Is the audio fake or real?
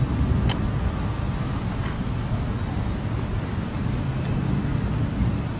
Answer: real